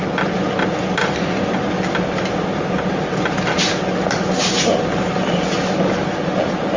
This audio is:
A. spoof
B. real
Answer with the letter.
B